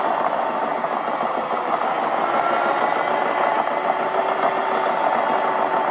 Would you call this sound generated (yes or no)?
no